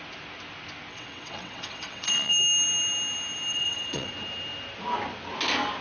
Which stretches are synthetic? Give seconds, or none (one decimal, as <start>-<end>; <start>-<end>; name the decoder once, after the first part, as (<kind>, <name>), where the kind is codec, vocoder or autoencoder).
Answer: 0.9-2.3 (vocoder, WaveNeXt); 3.5-4.1